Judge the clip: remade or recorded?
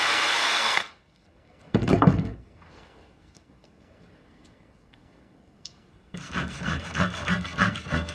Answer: remade